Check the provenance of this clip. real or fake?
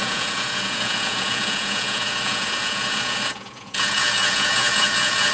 fake